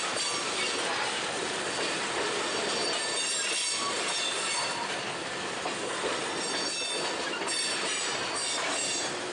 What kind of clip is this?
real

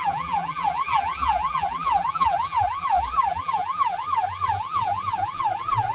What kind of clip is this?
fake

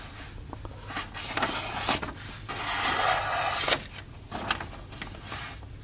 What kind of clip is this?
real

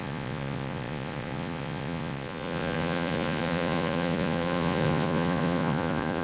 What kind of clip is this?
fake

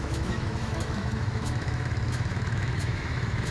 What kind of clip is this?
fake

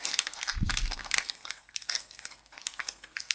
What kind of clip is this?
fake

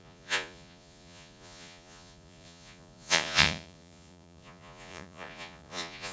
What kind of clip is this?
fake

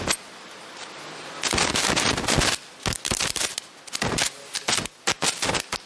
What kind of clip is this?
real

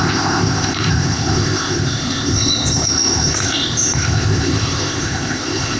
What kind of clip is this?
fake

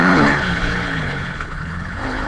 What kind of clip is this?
fake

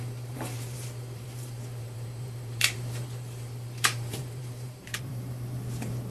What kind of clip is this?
fake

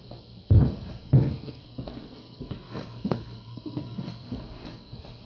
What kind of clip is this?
fake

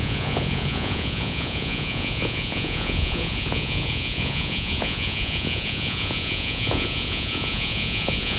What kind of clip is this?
fake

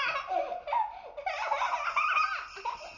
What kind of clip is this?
real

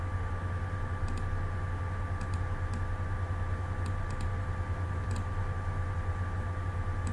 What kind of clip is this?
real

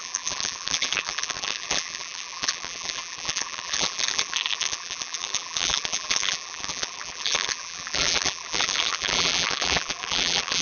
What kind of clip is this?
fake